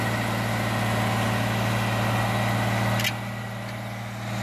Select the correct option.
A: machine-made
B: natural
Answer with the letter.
B